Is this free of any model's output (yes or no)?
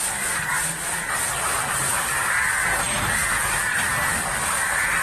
yes